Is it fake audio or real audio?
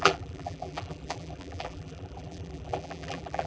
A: fake